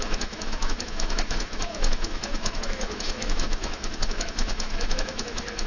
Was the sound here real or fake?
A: fake